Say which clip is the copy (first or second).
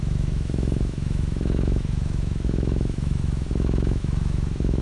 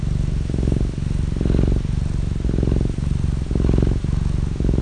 first